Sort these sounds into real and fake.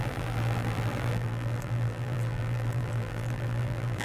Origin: fake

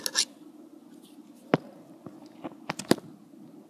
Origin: real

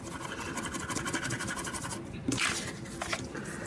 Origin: real